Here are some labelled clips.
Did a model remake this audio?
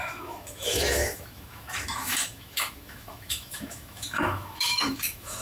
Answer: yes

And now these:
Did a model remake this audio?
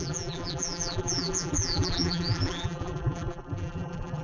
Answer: yes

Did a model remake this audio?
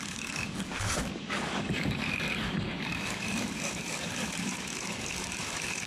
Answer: yes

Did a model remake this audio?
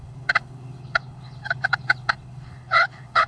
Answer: yes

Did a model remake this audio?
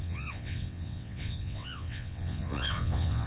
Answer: yes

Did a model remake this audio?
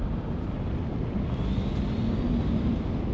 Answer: no